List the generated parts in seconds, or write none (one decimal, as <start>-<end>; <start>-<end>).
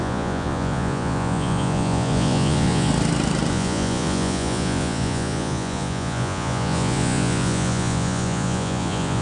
0.0-2.9; 3.5-9.2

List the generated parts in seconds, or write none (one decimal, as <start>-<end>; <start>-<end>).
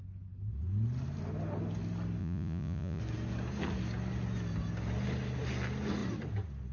2.2-3.0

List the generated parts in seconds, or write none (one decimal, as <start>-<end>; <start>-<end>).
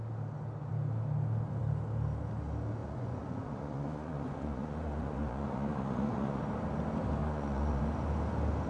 2.8-6.4; 7.2-7.8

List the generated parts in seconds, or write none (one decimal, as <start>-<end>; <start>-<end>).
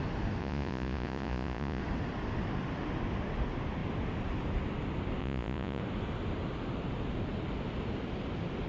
0.4-1.8; 5.2-5.8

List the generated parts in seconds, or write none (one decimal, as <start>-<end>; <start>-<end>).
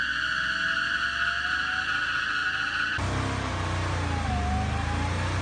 none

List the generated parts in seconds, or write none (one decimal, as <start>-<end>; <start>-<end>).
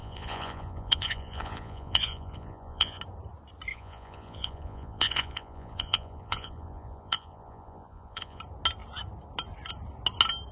0.0-3.0; 3.7-8.4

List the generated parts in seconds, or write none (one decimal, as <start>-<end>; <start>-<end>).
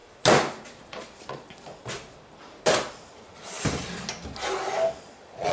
0.8-1.7; 5.0-5.5